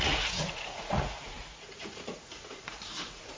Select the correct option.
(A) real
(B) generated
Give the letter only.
B